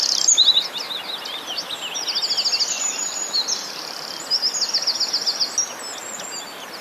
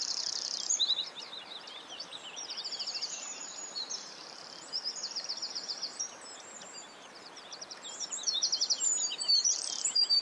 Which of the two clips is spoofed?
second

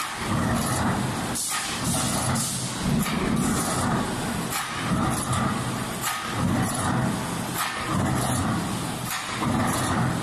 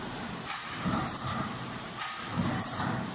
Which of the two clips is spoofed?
second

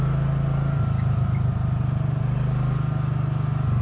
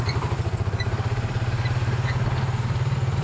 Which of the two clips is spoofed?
second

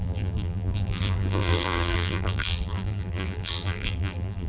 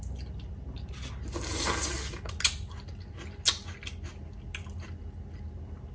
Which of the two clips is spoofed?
first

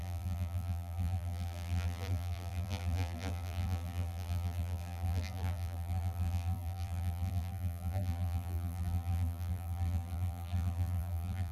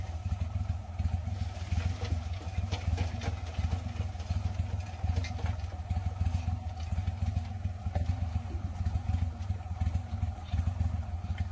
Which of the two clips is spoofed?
first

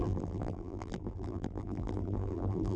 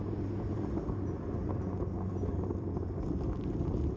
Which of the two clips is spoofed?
first